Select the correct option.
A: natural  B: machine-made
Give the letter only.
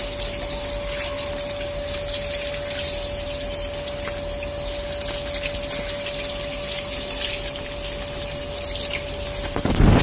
A